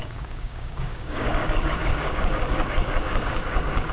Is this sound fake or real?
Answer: fake